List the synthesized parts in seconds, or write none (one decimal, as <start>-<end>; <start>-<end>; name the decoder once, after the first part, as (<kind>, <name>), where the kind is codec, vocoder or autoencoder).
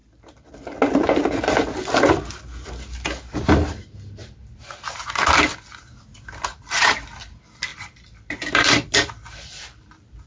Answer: 7.7-10.3 (vocoder, BigVGAN v2)